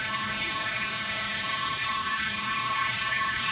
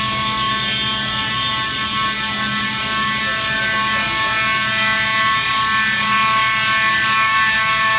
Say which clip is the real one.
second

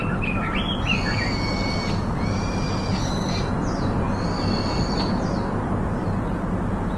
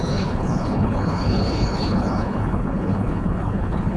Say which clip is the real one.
first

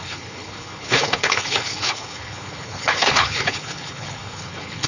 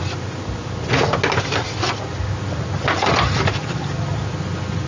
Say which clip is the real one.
second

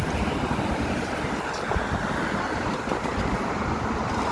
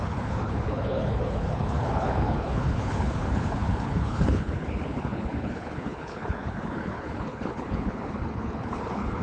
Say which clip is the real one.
first